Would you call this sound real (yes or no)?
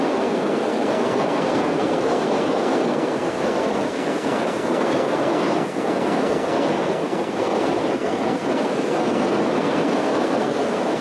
no